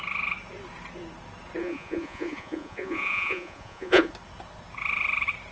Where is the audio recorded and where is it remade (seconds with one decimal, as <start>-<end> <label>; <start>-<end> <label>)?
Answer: 0.0-1.6 recorded; 1.6-4.1 remade; 4.1-5.5 recorded